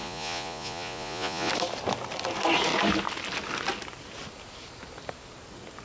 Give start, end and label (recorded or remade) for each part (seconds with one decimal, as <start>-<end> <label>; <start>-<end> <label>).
0.0-1.5 remade; 1.5-5.8 recorded